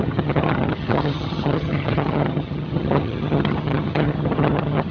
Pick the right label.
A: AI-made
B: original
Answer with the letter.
A